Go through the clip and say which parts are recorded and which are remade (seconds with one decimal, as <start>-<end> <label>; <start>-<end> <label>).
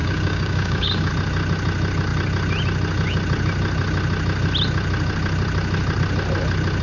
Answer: 0.0-1.1 remade; 1.1-6.8 recorded